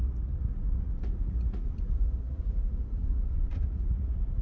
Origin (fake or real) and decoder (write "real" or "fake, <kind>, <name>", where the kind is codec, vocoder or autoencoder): fake, vocoder, Vocos